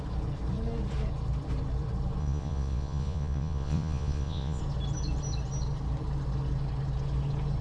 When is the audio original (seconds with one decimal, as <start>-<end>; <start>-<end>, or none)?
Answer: 0.0-2.2; 4.6-7.6